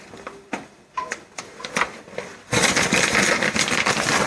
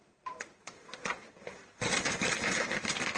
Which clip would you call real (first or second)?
first